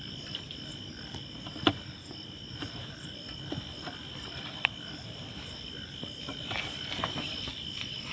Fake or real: real